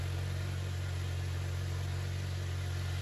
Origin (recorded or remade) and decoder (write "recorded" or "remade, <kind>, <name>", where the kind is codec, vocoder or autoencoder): recorded